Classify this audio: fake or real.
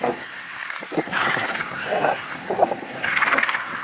fake